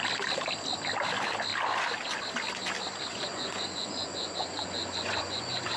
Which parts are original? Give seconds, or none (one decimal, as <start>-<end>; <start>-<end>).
0.0-3.1